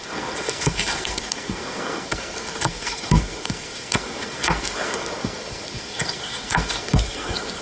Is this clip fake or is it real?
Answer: fake